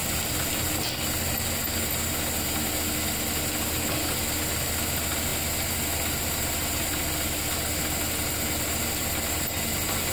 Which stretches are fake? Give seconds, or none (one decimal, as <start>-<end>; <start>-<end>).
none